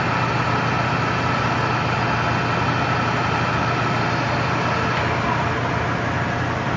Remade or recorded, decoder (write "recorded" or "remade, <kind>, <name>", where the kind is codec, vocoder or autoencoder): recorded